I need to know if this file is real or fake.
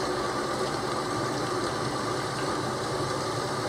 real